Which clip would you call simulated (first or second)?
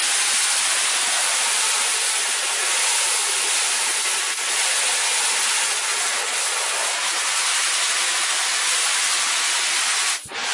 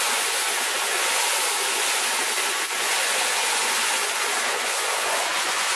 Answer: second